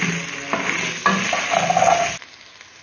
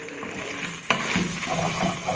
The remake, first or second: second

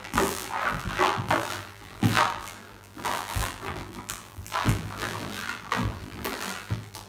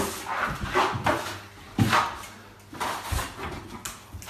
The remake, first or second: first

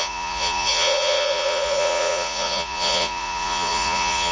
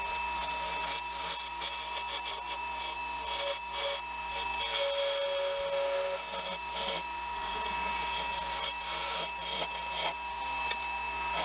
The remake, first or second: first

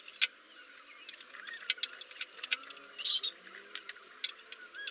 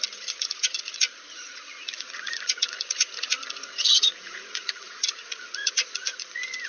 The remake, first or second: second